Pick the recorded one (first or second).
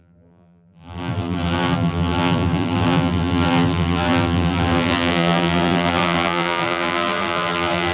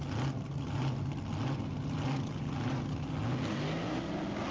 second